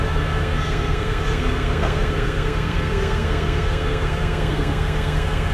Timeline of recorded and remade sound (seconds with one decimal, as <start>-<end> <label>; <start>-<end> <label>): 0.0-5.5 remade